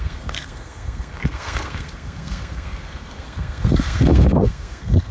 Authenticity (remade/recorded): remade